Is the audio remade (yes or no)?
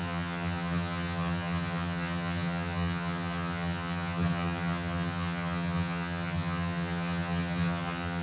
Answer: yes